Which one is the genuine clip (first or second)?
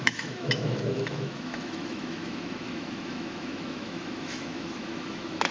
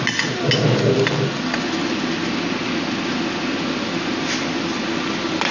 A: second